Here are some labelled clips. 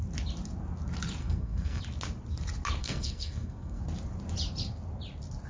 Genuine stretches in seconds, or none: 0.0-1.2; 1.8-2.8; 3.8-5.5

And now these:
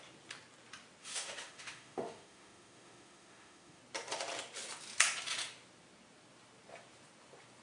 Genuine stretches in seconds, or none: 0.0-1.0; 3.8-7.6

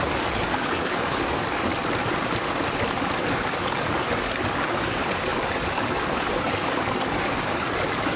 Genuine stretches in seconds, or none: 1.7-3.2

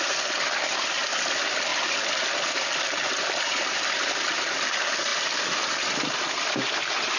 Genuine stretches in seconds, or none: 0.0-7.2